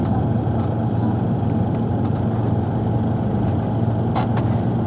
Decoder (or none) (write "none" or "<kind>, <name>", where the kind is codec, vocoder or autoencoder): none